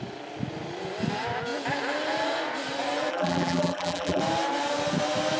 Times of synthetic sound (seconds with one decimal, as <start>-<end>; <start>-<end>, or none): 3.1-4.2